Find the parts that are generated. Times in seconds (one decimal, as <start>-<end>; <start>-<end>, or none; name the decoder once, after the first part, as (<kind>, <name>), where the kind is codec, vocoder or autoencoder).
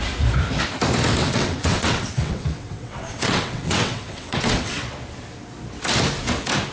1.2-4.8 (vocoder, WaveNeXt)